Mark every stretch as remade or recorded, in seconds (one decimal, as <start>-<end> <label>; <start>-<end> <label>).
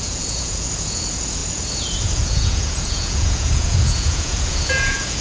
0.0-5.2 remade